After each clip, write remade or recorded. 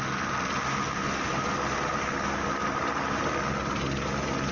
recorded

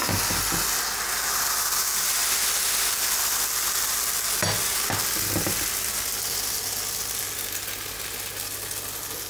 recorded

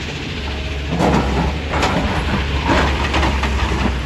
recorded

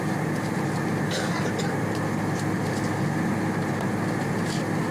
recorded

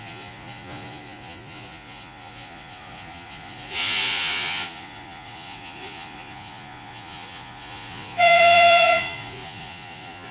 remade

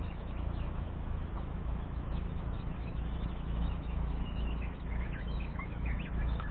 remade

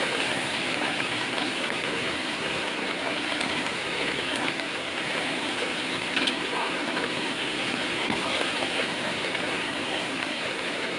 remade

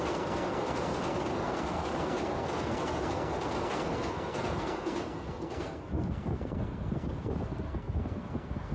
remade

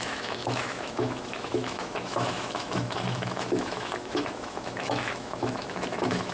remade